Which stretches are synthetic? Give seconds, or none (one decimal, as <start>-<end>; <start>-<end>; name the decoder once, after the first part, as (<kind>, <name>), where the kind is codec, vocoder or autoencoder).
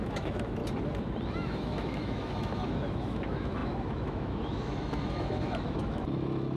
0.0-0.6 (autoencoder, DAC-VAE); 1.3-6.6